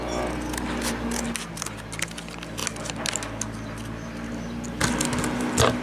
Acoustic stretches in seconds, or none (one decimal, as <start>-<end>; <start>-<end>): 0.0-5.8